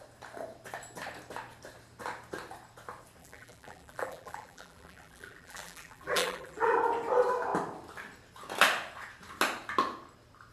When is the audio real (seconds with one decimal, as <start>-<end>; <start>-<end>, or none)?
0.0-3.2; 6.8-10.5